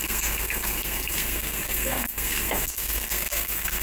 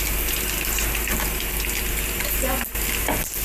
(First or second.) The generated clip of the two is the first